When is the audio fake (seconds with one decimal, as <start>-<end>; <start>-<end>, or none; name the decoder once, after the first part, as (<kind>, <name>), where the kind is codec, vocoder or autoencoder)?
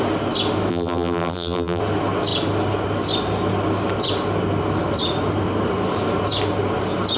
0.7-1.8 (vocoder, BigVGAN v2)